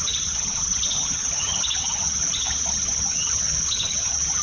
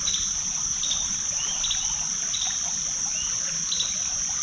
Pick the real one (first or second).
second